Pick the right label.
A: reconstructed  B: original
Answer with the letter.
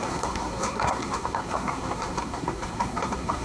A